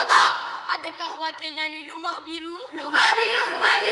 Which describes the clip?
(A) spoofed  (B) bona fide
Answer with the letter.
A